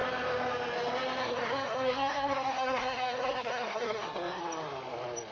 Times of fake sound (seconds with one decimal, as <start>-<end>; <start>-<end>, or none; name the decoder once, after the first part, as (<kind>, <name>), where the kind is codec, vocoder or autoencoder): 1.2-4.4 (codec, SNAC)